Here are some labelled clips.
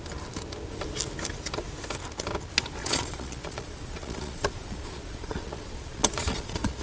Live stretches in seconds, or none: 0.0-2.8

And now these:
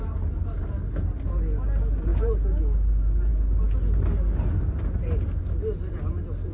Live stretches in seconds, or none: 0.0-6.5